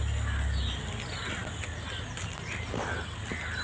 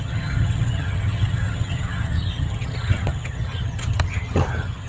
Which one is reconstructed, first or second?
second